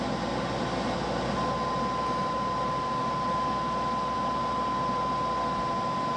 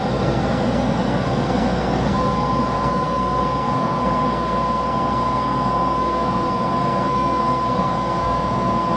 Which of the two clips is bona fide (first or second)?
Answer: first